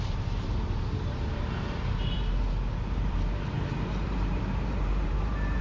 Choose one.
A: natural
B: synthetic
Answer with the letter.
B